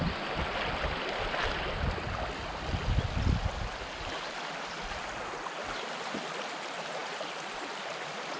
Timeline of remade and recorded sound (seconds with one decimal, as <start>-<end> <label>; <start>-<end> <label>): 0.0-8.4 recorded